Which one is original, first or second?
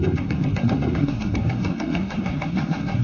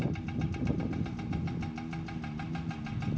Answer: second